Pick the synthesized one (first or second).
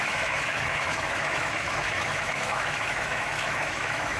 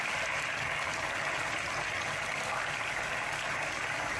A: first